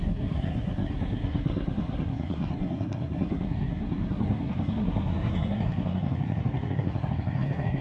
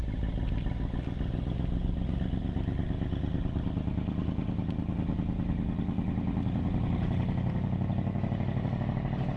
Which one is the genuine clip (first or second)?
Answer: second